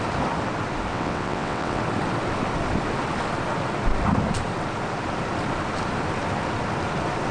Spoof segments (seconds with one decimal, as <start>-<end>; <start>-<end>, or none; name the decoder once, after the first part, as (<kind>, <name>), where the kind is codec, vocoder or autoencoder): 0.9-1.8 (vocoder, WaveNeXt)